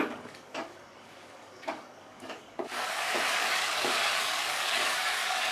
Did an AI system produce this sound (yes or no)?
yes